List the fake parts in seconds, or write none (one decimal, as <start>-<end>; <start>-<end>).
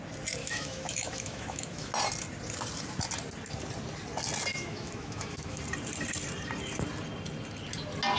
0.4-1.9; 4.5-5.6